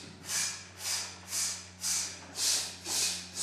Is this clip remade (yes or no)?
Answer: no